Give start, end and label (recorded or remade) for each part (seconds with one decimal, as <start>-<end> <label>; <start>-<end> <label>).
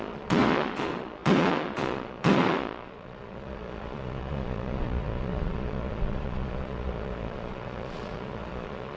0.0-9.0 remade